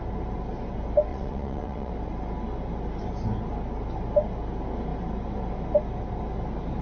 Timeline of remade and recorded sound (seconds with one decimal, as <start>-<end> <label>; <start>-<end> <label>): 0.0-1.1 recorded; 1.1-1.9 remade; 1.9-6.8 recorded